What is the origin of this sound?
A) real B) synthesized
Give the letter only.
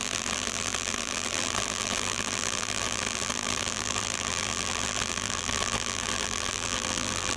B